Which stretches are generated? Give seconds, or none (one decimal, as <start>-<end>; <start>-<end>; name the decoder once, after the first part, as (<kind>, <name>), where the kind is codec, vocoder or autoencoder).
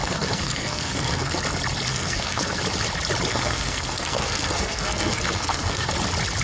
0.0-1.4 (codec, SNAC); 1.9-2.6; 3.3-5.9